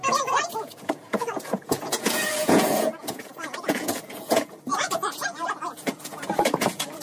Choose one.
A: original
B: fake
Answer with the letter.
B